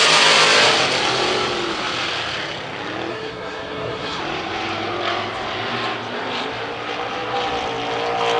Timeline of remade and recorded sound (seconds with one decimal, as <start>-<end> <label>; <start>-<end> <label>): 0.0-3.1 recorded; 3.1-4.2 remade; 4.2-8.4 recorded